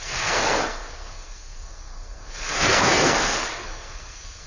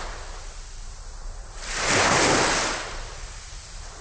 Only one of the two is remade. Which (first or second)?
first